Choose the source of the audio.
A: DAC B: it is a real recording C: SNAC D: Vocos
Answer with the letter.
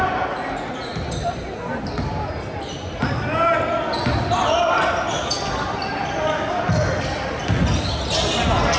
B